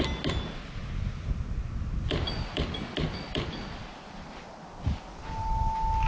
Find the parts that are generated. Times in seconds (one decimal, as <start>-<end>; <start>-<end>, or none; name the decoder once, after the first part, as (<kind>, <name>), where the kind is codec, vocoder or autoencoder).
none